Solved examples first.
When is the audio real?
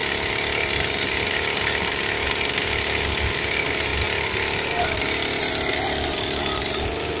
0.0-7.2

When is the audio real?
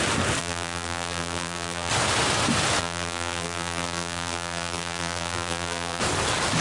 0.0-0.4; 1.9-2.8; 6.0-6.6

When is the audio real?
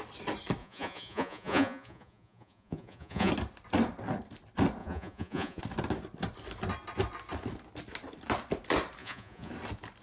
0.0-0.6; 3.3-4.8; 5.6-9.0; 9.5-10.0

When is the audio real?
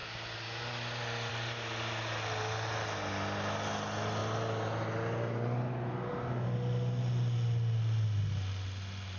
0.0-9.2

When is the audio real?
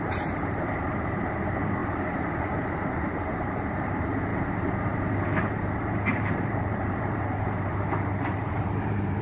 none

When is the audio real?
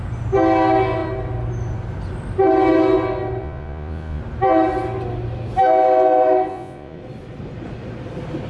0.0-3.4; 4.2-6.5; 7.0-8.5